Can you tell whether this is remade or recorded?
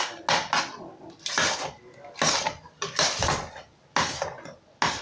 recorded